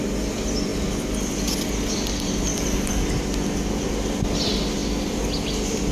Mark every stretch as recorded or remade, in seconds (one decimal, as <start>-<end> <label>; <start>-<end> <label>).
0.0-5.9 recorded